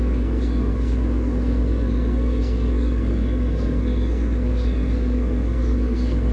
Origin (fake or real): fake